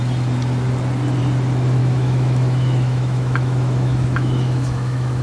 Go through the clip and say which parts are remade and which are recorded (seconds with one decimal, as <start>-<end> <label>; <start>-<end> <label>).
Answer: 0.0-1.8 recorded; 1.8-5.2 remade